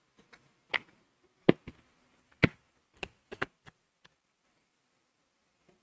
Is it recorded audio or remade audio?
recorded